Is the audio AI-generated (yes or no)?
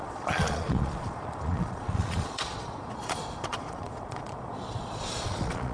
yes